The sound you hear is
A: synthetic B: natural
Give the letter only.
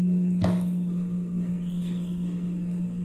A